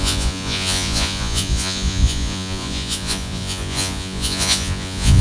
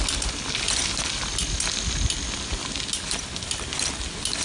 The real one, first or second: second